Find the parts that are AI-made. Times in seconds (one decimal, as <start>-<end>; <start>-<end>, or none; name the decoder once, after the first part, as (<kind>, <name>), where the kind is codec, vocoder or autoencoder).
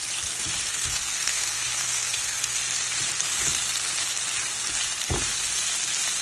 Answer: 0.7-2.6 (codec, SNAC)